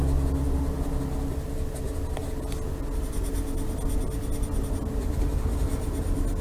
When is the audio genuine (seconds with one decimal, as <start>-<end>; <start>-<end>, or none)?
0.0-6.4

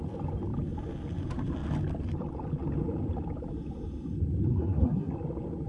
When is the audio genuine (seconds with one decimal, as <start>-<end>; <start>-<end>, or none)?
0.0-4.5; 5.1-5.7

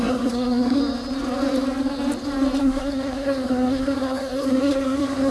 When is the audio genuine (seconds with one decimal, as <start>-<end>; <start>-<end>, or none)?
0.8-2.6